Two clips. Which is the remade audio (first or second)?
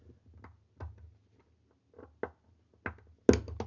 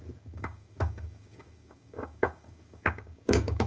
second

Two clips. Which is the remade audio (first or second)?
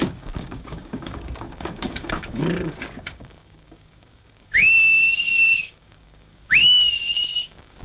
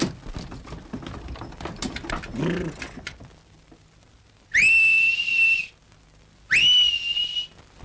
first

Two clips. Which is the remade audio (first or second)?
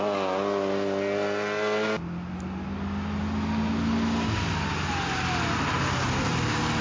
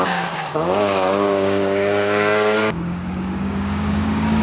second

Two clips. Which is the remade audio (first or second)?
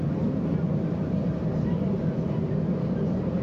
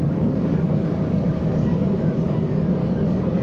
second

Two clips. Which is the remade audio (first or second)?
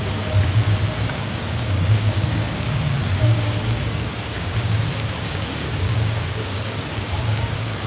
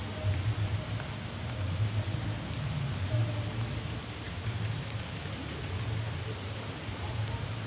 first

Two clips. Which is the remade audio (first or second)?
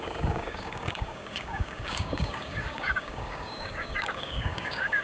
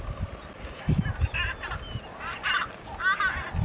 first